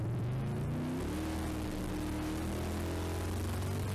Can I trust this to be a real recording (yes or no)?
yes